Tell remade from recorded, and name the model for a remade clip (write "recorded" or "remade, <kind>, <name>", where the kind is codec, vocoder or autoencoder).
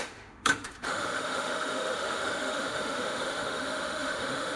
remade, autoencoder, DAC-VAE